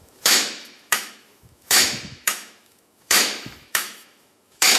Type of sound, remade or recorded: remade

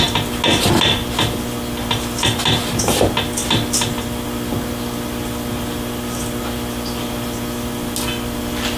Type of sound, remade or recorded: recorded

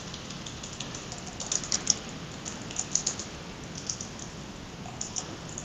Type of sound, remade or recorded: recorded